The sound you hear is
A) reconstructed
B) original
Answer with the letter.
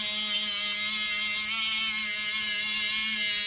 B